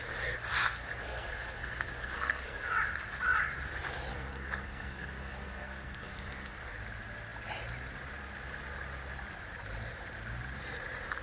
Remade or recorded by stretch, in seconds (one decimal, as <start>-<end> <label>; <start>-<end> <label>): 0.0-0.5 recorded; 0.5-2.7 remade; 2.7-4.1 recorded; 4.1-6.7 remade; 6.7-11.2 recorded